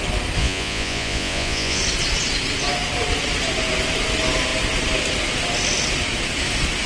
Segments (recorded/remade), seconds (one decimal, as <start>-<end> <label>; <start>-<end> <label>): 0.0-0.4 recorded; 0.4-1.8 remade; 1.8-6.9 recorded